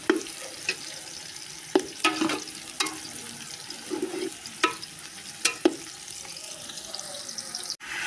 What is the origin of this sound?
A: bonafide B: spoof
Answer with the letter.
A